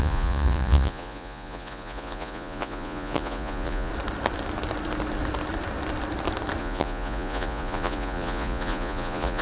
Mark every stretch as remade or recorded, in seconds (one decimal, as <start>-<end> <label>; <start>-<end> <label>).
0.0-3.9 remade; 3.9-6.6 recorded; 6.6-9.4 remade